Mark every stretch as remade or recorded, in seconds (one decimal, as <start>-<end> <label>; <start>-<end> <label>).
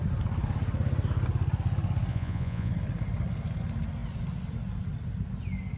0.0-2.1 recorded; 2.1-2.7 remade; 2.7-5.8 recorded